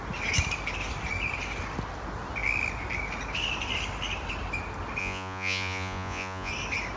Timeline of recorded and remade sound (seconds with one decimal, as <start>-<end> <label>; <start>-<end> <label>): 0.0-5.0 recorded; 5.0-6.5 remade; 6.5-7.0 recorded